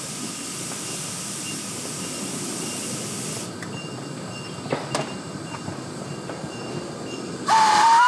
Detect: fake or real real